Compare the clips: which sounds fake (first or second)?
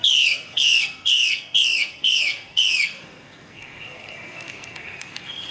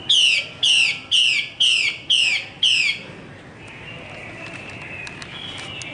first